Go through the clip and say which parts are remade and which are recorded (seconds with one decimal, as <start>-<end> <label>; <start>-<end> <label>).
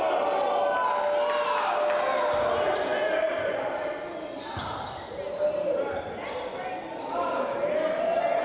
0.0-8.4 recorded